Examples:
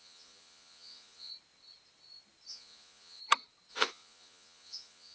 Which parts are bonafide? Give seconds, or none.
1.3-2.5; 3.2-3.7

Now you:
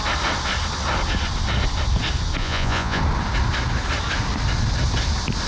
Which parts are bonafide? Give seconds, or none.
0.0-2.4; 3.0-5.5

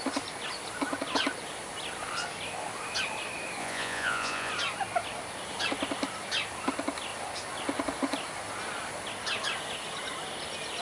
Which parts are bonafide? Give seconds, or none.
0.0-3.6; 4.5-10.8